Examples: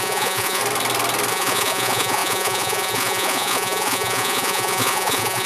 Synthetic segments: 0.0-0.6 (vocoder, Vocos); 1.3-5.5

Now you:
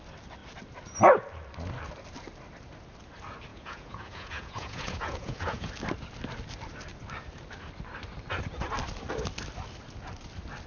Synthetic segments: 3.5-5.7 (vocoder, Vocos)

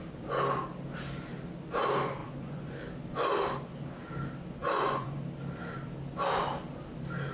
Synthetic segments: 2.2-2.7 (vocoder, Vocos); 4.6-5.2